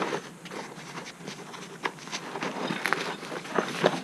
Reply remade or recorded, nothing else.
recorded